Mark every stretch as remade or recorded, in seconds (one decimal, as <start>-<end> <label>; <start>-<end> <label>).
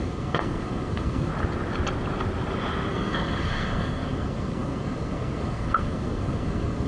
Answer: 0.0-1.3 remade; 1.3-2.9 recorded; 2.9-6.9 remade